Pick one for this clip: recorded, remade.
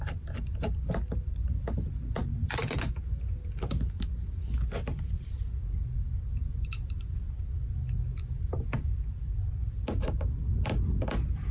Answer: recorded